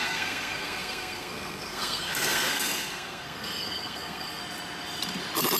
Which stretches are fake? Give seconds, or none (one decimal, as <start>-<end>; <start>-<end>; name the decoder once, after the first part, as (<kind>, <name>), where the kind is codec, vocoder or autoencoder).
0.0-4.4 (codec, SNAC)